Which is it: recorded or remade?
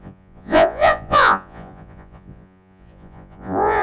remade